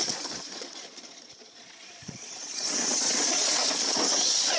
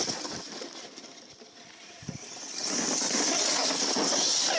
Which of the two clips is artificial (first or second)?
first